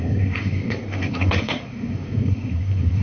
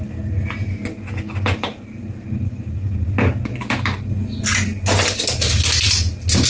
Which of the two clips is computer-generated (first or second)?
first